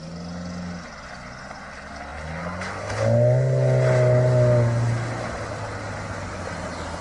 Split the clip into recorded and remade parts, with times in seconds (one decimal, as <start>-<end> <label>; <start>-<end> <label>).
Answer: 0.0-7.0 recorded